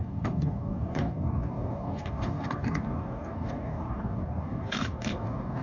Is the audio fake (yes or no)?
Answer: yes